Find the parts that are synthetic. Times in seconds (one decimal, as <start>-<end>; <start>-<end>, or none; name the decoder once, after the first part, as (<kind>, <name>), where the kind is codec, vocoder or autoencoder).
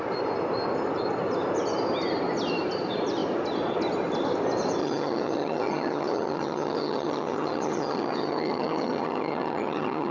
4.8-10.1 (vocoder, HiFi-GAN)